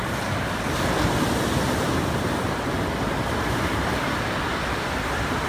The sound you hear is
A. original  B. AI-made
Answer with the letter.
A